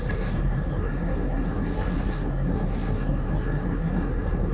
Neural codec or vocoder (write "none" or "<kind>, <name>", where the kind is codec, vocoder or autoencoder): codec, SNAC